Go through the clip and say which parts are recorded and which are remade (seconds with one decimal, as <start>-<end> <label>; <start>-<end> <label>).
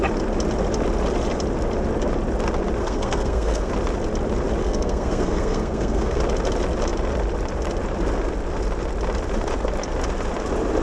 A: 0.0-2.8 recorded; 2.8-3.7 remade; 3.7-4.6 recorded; 4.6-6.2 remade; 6.2-10.8 recorded